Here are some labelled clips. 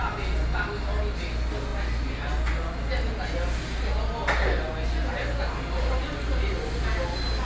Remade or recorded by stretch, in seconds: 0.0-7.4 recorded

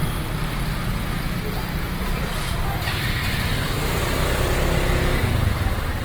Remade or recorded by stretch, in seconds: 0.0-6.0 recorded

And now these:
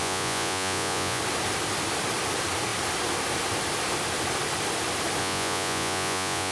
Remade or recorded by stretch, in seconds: 0.0-1.2 remade; 1.2-5.2 recorded; 5.2-6.5 remade

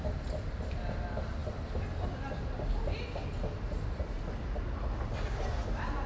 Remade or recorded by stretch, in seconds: 0.0-6.1 recorded

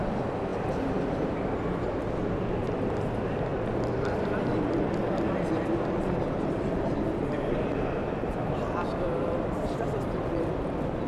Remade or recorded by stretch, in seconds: 0.0-0.5 remade; 0.5-2.4 recorded; 2.4-3.5 remade; 3.5-5.8 recorded; 5.8-11.1 remade

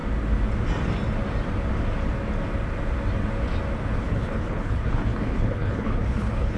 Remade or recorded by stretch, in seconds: 0.0-4.0 recorded; 4.0-6.6 remade

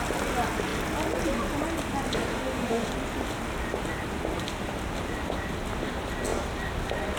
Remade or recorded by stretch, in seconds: 0.0-2.3 recorded; 2.3-2.9 remade; 2.9-7.2 recorded

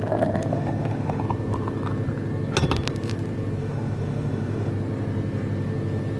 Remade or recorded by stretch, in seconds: 0.0-0.5 recorded; 0.5-1.2 remade; 1.2-3.6 recorded; 3.6-4.7 remade; 4.7-6.2 recorded